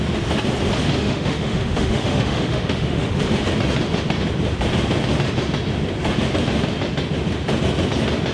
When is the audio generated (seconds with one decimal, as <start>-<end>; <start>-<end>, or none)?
1.0-3.2